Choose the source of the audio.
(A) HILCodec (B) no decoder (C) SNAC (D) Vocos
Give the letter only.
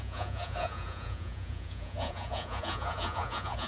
D